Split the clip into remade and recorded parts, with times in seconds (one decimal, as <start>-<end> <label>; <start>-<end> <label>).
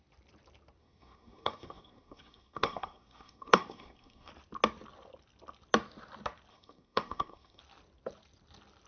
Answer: 0.0-0.8 recorded; 0.8-4.3 remade; 4.3-6.5 recorded; 6.5-7.6 remade; 7.6-8.9 recorded